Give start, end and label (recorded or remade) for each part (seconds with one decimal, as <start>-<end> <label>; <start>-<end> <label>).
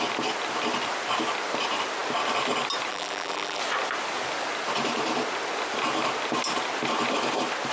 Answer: 0.0-2.9 recorded; 2.9-3.6 remade; 3.6-7.7 recorded